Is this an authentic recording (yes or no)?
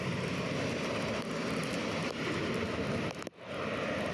yes